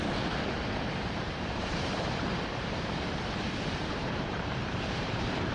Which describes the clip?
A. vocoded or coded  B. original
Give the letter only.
A